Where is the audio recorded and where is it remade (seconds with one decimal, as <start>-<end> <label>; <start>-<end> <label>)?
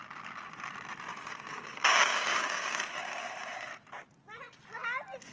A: 0.0-1.1 recorded; 1.1-3.7 remade; 3.7-5.3 recorded